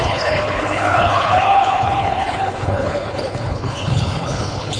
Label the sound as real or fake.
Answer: fake